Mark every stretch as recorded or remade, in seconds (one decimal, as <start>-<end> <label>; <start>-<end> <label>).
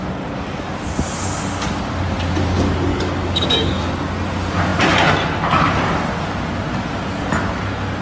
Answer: 0.0-2.9 recorded; 2.9-3.9 remade; 3.9-8.0 recorded